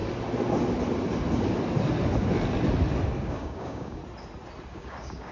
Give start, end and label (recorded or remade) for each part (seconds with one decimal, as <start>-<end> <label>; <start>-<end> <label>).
0.0-3.2 recorded; 3.2-4.0 remade; 4.0-4.7 recorded; 4.7-5.3 remade